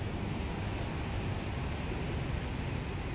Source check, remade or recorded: recorded